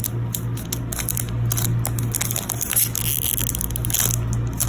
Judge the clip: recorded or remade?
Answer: recorded